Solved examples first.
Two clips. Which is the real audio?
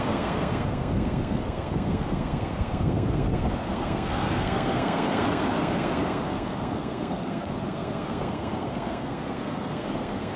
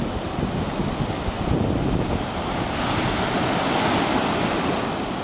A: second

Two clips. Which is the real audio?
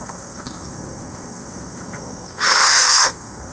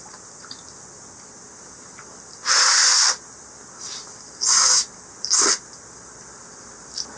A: second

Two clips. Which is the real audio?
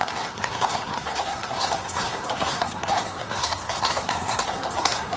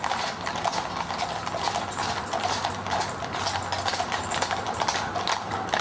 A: second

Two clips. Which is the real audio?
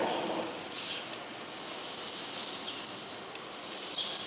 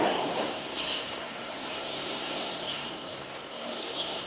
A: first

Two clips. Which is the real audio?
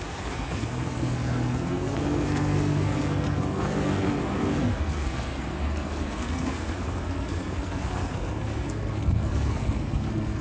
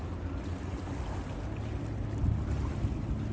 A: second